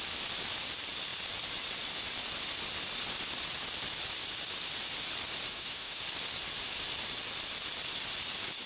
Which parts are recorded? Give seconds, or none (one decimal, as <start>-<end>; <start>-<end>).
0.0-5.5; 6.0-8.7